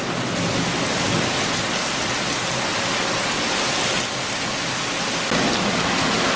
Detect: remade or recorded recorded